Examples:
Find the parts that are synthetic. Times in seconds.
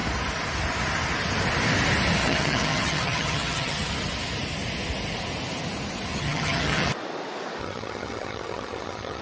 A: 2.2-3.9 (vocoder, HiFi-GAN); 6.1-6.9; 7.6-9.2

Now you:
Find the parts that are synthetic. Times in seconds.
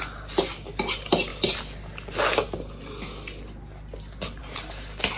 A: none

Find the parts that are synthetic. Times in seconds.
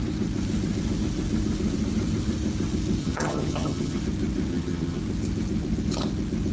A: 3.0-4.0 (vocoder, HiFi-GAN); 4.5-5.0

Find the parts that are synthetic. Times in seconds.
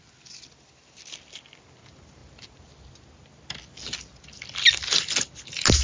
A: none